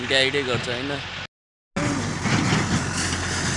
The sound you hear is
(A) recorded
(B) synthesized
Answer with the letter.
A